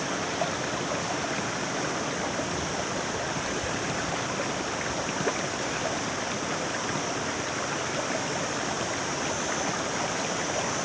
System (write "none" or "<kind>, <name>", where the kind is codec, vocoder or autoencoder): none